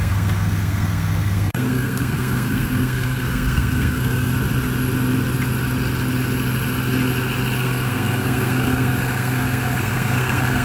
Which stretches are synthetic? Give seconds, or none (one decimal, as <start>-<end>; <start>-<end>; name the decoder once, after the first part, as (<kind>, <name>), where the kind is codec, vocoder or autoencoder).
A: 0.0-4.3 (codec, SNAC); 7.6-10.6